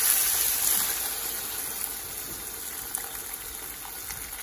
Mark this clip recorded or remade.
recorded